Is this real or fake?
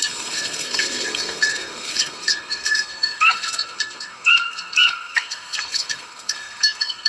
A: fake